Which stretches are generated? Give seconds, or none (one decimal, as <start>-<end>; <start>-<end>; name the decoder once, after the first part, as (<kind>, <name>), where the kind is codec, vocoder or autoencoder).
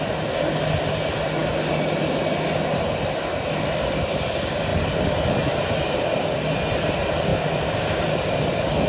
4.7-5.4 (vocoder, BigVGAN v2); 7.3-8.9